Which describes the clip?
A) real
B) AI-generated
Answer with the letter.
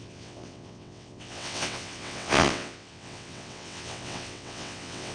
B